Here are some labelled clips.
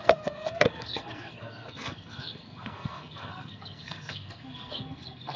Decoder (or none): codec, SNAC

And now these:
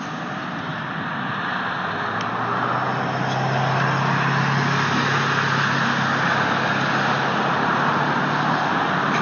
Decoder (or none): none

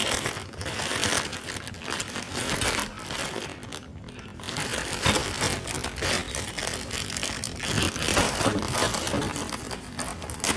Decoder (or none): none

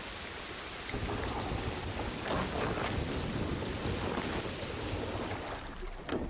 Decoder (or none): none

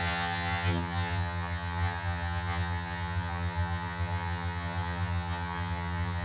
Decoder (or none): vocoder, HiFi-GAN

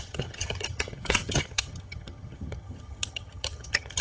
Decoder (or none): vocoder, HiFi-GAN